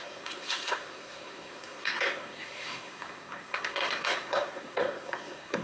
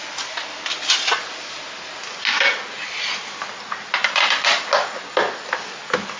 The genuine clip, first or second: second